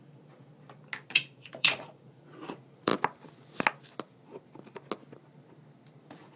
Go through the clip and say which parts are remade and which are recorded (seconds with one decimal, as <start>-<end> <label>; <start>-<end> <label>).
0.0-0.5 remade; 0.5-1.1 recorded; 1.1-2.9 remade; 2.9-6.0 recorded; 6.0-6.4 remade